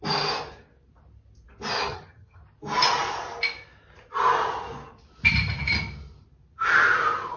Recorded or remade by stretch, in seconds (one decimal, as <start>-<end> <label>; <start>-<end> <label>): 0.0-1.9 recorded; 1.9-2.4 remade; 2.4-7.4 recorded